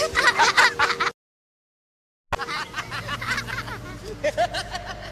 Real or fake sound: real